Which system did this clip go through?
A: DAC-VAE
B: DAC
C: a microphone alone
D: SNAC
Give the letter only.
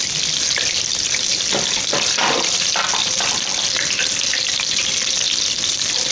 C